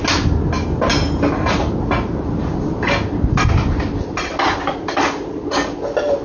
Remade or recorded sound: recorded